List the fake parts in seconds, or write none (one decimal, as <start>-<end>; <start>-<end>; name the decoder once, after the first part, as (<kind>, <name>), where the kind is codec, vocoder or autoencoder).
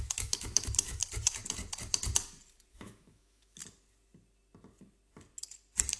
0.0-1.0 (autoencoder, DAC-VAE); 2.7-3.6